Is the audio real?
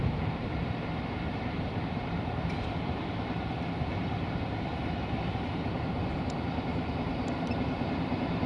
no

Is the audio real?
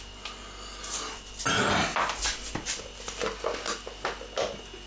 yes